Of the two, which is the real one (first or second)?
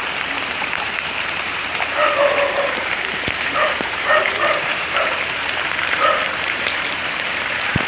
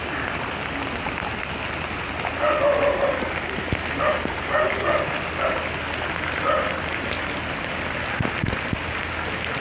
second